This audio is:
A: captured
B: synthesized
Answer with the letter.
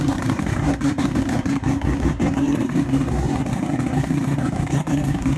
B